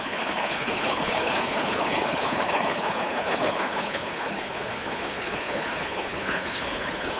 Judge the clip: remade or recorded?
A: remade